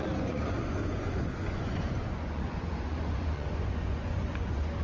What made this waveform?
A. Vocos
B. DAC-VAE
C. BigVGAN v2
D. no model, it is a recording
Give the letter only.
A